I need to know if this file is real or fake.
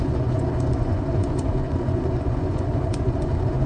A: fake